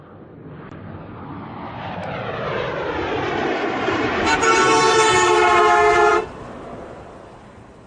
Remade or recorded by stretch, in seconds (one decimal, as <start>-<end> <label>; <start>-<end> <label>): 0.0-2.0 recorded; 2.0-5.6 remade; 5.6-6.1 recorded; 6.1-7.9 remade